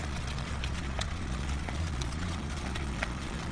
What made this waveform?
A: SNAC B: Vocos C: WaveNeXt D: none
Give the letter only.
B